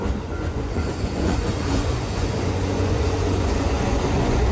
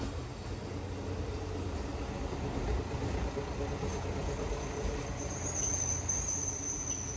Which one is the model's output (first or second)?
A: first